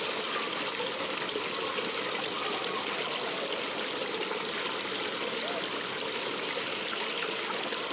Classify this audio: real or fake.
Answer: real